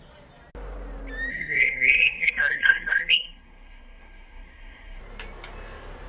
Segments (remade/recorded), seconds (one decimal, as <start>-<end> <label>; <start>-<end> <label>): 0.0-1.3 recorded; 1.3-5.0 remade; 5.0-6.1 recorded